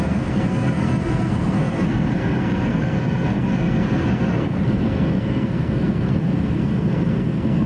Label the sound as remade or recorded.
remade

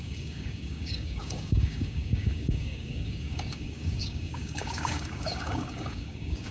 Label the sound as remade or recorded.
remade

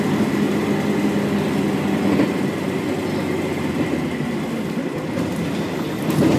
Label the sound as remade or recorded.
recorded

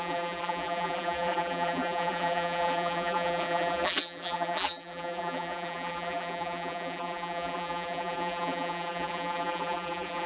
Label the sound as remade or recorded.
remade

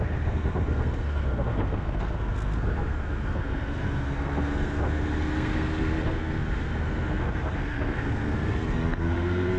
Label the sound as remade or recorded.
remade